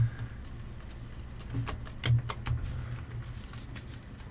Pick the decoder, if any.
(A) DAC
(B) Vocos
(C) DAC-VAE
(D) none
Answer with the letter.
D